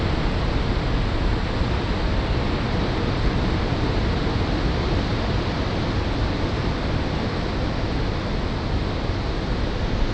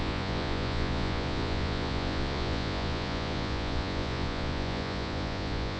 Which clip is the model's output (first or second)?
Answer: second